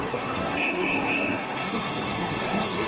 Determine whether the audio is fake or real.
fake